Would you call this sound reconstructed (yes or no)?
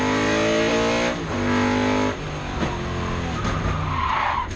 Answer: no